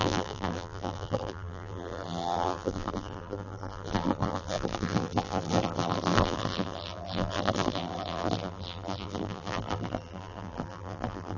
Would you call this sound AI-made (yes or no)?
yes